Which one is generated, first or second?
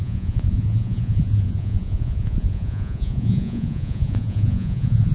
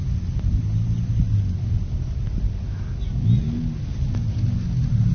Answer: first